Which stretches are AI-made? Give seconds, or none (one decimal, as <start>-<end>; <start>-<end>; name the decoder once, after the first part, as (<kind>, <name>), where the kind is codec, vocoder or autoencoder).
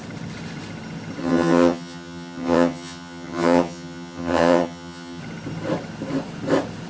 1.2-5.2 (vocoder, HiFi-GAN)